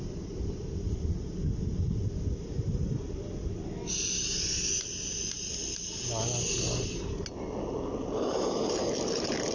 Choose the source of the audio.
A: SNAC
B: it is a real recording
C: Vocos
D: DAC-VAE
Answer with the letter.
B